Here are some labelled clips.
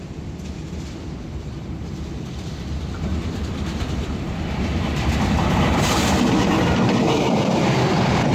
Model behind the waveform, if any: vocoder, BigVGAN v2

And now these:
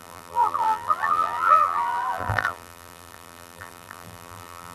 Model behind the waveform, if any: vocoder, BigVGAN v2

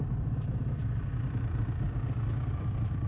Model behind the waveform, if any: vocoder, BigVGAN v2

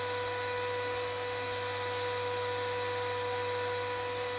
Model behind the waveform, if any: none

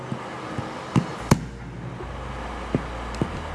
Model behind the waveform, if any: none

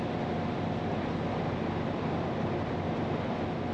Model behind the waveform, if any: none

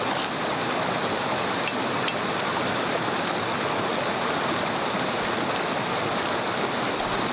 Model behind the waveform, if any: none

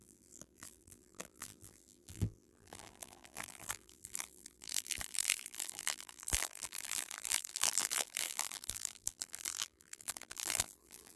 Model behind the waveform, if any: vocoder, BigVGAN v2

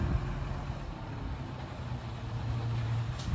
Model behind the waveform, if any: none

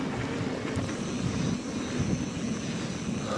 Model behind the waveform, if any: none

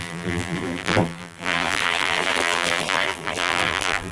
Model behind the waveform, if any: vocoder, BigVGAN v2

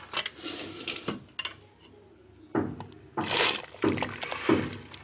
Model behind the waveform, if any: none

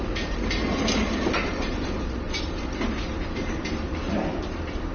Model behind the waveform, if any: vocoder, BigVGAN v2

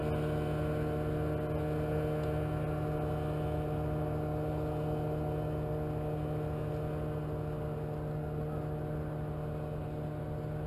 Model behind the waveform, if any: none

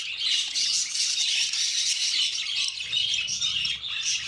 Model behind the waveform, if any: none